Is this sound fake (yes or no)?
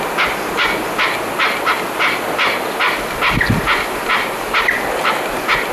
no